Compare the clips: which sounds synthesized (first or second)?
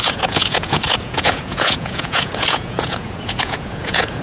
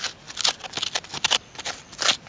first